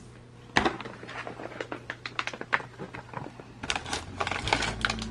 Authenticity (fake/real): real